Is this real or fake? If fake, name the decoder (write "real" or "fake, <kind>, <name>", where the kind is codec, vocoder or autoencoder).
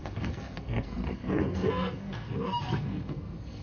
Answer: fake, codec, SNAC